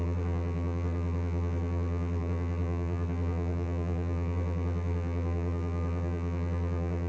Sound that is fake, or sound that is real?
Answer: fake